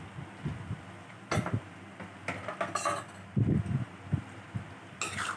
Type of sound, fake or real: real